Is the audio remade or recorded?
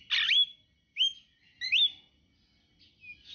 recorded